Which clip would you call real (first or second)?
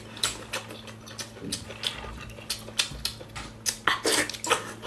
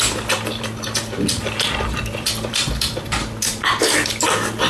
first